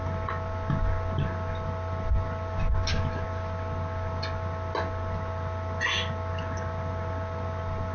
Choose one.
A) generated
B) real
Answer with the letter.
B